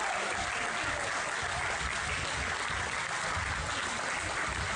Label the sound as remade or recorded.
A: recorded